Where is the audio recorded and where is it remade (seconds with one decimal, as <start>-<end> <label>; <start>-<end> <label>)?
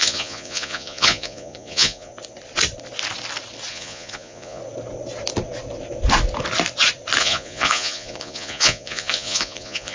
0.0-2.1 remade; 2.1-3.7 recorded; 3.7-4.6 remade; 4.6-7.2 recorded; 7.2-9.9 remade